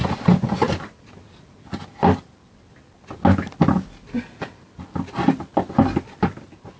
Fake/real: real